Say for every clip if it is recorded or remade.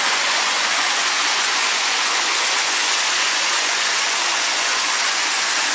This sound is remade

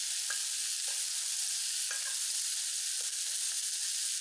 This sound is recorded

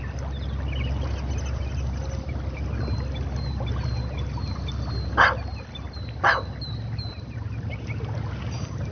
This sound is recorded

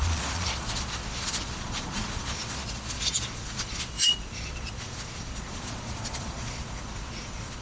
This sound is remade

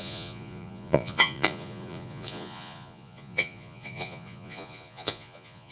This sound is remade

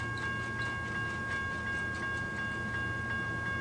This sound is recorded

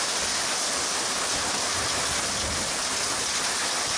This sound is recorded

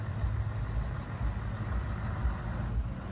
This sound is recorded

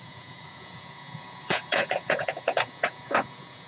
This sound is remade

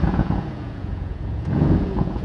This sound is remade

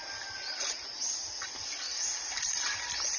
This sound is recorded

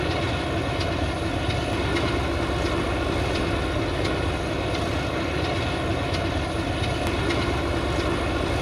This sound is recorded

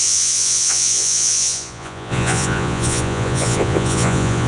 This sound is remade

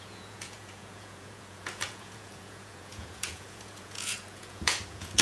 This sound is remade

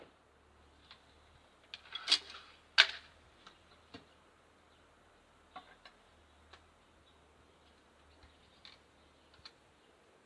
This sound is recorded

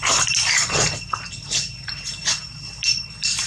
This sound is recorded